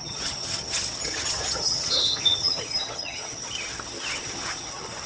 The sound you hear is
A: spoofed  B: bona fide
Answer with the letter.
A